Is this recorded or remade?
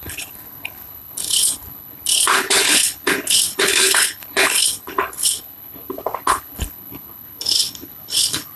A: remade